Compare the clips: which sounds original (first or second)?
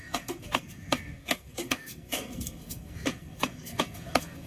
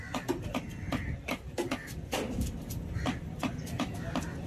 second